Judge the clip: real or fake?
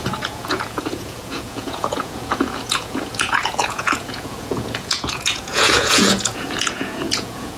fake